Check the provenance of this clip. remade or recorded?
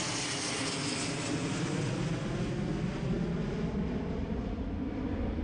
recorded